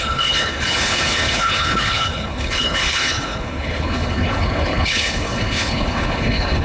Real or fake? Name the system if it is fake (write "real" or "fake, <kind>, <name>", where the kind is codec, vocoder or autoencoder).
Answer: fake, codec, HILCodec